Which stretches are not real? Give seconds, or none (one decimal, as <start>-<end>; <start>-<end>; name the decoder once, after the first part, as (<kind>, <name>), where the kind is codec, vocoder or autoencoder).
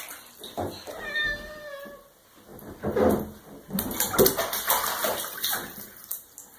none